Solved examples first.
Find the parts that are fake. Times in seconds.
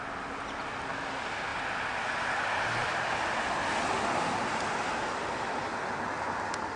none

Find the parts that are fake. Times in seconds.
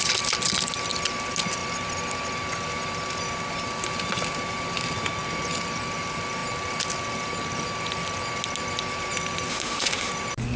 9.5-10.1 (autoencoder, DAC-VAE)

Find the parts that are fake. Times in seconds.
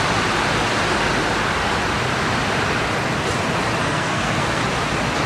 3.8-4.6 (codec, SNAC)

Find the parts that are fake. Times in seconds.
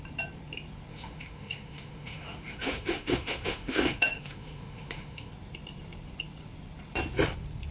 0.9-5.3 (autoencoder, DAC-VAE)